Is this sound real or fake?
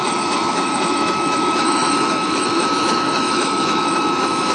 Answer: fake